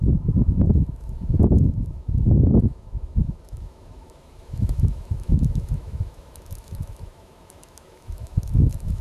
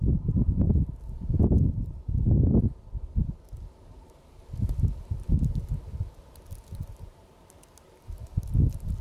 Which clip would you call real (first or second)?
second